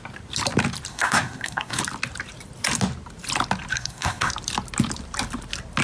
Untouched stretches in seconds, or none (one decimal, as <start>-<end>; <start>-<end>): 0.0-0.9; 1.8-3.7; 4.3-5.8